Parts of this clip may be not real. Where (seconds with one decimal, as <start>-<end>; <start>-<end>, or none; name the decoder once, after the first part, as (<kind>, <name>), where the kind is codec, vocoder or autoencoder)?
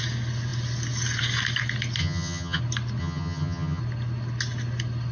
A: 2.0-2.6 (vocoder, HiFi-GAN); 3.0-3.8